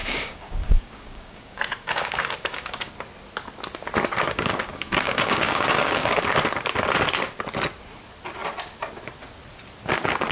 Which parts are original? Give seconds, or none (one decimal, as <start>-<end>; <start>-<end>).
2.9-4.2; 6.2-10.3